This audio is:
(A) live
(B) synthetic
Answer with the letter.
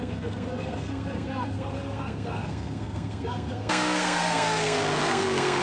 B